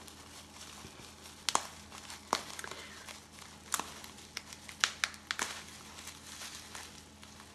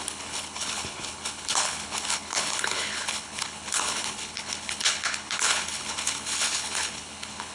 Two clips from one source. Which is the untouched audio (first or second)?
first